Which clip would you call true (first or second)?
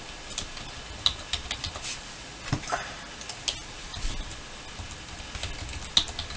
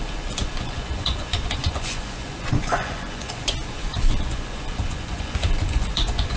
first